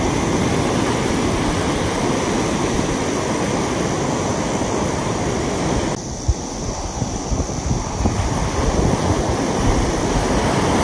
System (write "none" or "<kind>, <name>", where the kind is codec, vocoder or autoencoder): none